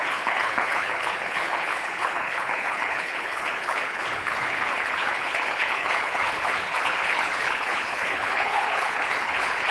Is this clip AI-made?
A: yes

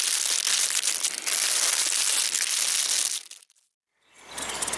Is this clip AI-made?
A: no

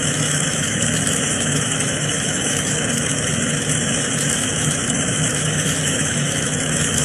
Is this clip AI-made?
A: yes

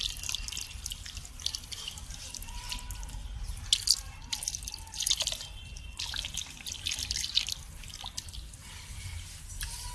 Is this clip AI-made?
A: no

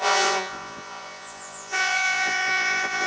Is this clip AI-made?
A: yes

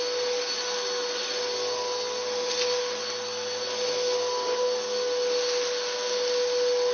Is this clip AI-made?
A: no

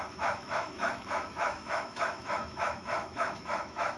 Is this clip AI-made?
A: yes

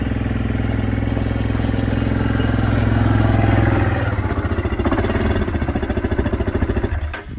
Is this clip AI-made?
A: no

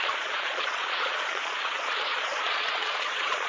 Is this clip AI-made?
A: yes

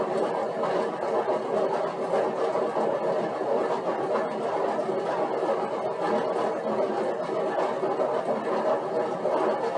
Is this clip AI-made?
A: no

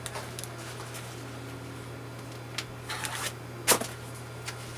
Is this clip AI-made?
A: no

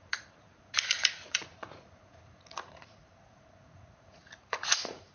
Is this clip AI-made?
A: yes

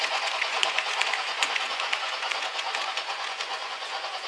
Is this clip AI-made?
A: yes